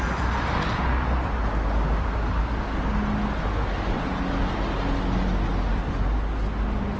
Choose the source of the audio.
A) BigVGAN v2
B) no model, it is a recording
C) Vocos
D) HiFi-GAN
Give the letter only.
B